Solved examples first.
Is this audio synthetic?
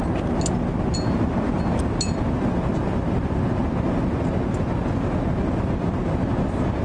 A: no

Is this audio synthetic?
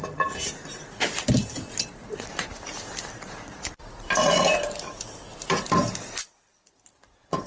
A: no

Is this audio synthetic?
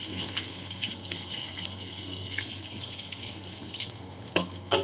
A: yes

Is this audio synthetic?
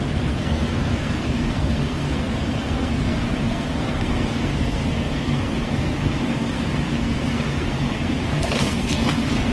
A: yes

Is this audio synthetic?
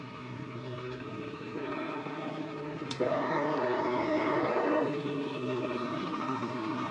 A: yes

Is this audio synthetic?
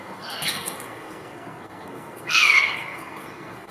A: yes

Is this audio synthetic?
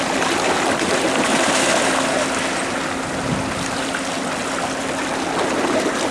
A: no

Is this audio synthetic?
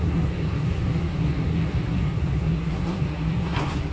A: yes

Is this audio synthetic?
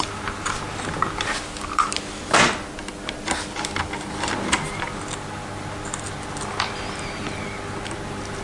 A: no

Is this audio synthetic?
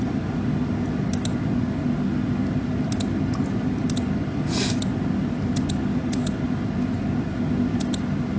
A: no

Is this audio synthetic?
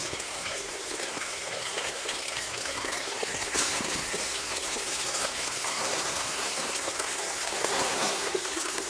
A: yes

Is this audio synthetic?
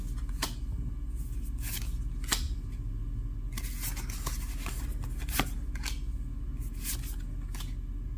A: no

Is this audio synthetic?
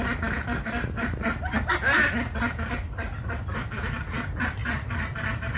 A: no